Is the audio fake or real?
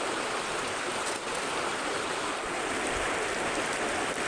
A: real